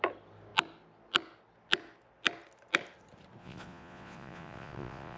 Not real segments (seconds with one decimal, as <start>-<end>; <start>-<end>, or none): 3.4-5.2